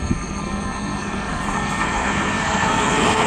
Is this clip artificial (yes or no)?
yes